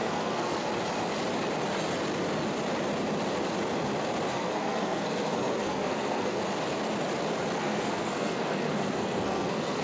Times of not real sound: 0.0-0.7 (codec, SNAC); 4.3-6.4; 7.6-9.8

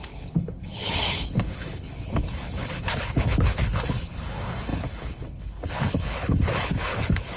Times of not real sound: 0.0-7.4 (codec, HILCodec)

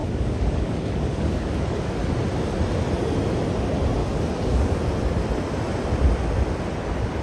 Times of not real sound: 0.0-2.0 (codec, DAC); 4.0-4.8

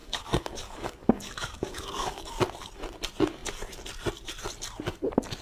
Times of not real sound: 0.0-2.4 (codec, DAC)